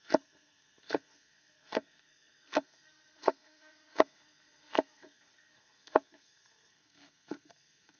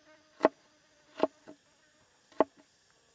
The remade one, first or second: first